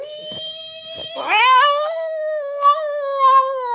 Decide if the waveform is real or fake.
fake